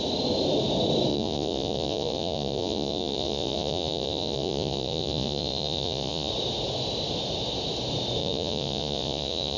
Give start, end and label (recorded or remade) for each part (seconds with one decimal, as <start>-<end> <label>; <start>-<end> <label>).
0.0-1.1 recorded; 1.1-6.3 remade; 6.3-8.2 recorded; 8.2-9.6 remade